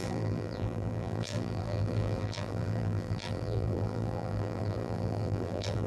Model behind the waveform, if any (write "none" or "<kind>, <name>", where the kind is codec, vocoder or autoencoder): vocoder, BigVGAN v2